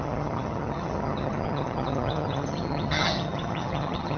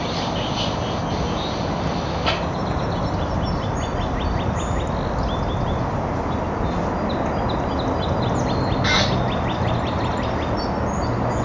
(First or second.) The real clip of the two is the second